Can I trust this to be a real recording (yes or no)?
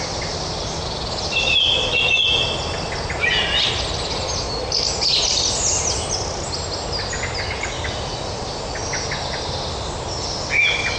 yes